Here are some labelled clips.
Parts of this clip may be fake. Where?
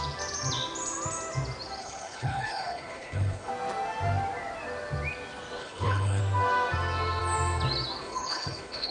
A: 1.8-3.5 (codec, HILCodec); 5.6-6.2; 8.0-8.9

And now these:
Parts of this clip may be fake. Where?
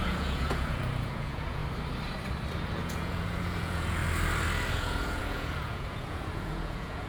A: 0.0-1.6 (vocoder, Vocos); 2.6-4.0; 4.7-7.1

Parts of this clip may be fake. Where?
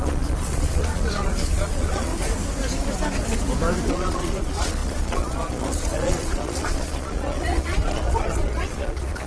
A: 0.0-2.1 (vocoder, Vocos); 3.9-9.3